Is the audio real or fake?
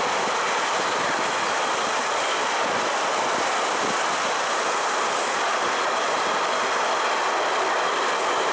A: real